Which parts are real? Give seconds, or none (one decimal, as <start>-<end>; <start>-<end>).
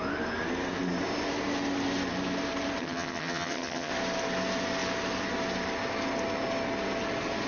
0.0-2.8; 3.9-7.5